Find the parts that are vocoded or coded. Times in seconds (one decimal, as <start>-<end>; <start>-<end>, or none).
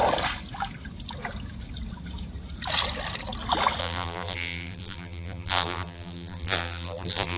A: 3.8-7.4